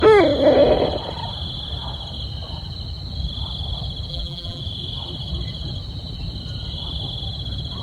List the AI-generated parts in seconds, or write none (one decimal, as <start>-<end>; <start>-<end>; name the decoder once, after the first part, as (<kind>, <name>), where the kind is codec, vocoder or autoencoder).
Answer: 4.1-4.6 (vocoder, BigVGAN v2)